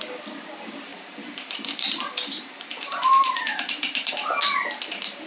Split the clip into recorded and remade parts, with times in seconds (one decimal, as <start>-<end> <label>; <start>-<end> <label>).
0.0-0.9 recorded; 0.9-4.1 remade; 4.1-5.3 recorded